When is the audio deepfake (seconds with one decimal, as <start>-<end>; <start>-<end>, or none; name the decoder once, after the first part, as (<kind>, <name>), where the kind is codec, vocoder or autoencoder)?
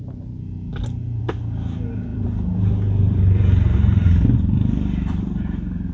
2.1-5.4 (vocoder, BigVGAN v2)